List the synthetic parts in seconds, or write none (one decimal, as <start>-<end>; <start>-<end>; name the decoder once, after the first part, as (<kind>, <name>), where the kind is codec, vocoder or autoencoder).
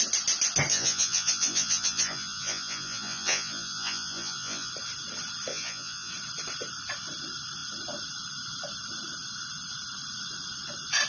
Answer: 0.7-4.7 (vocoder, Vocos); 5.5-6.1